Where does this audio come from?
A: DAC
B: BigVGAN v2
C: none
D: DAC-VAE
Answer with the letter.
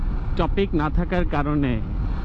C